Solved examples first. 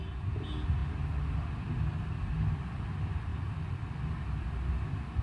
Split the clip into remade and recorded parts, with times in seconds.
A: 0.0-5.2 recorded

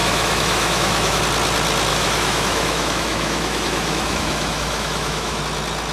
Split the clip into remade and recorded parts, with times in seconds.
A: 0.0-1.2 remade; 1.2-1.9 recorded; 1.9-5.4 remade; 5.4-5.9 recorded

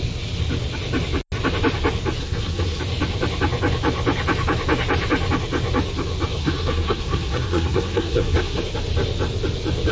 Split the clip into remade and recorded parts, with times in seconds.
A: 0.0-2.2 recorded; 2.2-2.8 remade; 2.8-6.4 recorded; 6.4-8.6 remade; 8.6-9.9 recorded

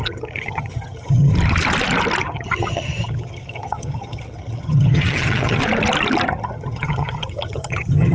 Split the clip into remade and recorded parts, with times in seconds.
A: 0.0-1.3 remade; 1.3-2.2 recorded; 2.2-5.6 remade; 5.6-6.3 recorded; 6.3-8.1 remade

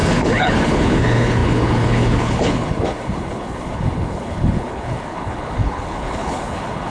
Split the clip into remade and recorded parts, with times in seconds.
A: 0.0-6.9 remade